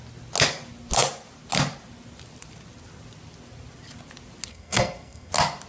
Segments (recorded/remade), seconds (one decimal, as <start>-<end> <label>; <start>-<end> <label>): 0.0-4.5 recorded; 4.5-5.3 remade; 5.3-5.7 recorded